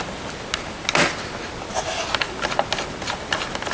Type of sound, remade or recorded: recorded